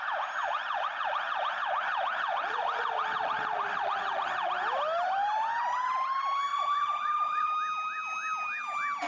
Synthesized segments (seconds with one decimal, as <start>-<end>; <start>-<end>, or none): 0.4-4.5; 6.5-7.5